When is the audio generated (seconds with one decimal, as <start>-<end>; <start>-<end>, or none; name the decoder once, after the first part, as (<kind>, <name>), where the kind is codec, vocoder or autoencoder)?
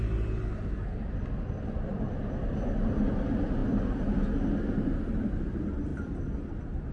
5.9-6.5 (vocoder, BigVGAN v2)